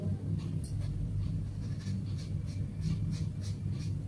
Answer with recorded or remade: recorded